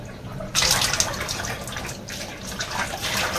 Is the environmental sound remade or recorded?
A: recorded